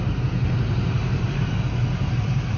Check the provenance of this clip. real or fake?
fake